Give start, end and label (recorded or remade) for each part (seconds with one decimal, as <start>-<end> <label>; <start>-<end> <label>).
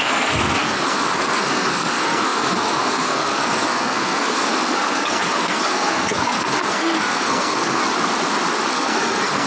0.0-7.8 remade; 7.8-8.7 recorded; 8.7-9.5 remade